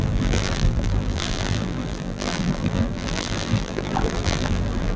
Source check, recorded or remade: remade